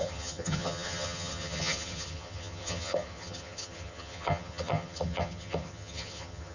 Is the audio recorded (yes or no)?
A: no